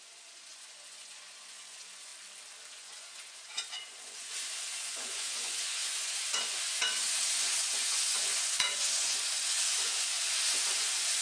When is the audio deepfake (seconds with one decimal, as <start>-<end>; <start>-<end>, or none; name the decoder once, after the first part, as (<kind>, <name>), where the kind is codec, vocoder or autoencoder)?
0.0-2.1 (vocoder, Vocos); 2.7-11.2